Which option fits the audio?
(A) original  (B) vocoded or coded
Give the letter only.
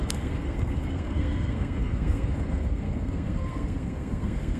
B